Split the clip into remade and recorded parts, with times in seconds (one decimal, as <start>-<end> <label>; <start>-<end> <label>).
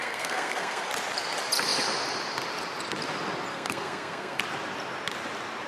0.0-0.9 remade; 0.9-3.5 recorded; 3.5-4.4 remade; 4.4-5.7 recorded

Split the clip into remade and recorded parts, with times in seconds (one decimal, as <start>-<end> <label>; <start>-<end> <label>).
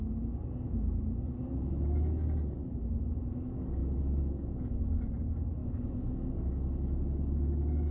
0.0-2.6 recorded; 2.6-3.1 remade; 3.1-3.8 recorded; 3.8-5.0 remade; 5.0-5.6 recorded; 5.6-6.3 remade; 6.3-7.9 recorded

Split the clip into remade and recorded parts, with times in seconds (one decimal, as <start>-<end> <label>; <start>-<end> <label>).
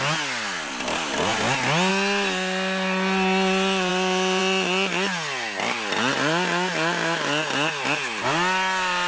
0.0-9.1 recorded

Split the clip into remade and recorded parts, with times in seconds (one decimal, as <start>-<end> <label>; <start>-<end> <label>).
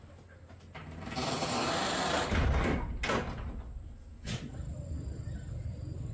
0.0-6.1 recorded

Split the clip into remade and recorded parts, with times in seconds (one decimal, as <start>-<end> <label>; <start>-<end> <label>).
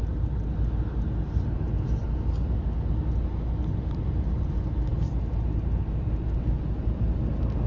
0.0-7.7 recorded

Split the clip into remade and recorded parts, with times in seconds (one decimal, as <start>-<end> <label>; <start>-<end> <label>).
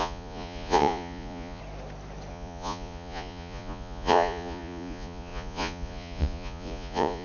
0.0-1.6 remade; 1.6-2.3 recorded; 2.3-7.2 remade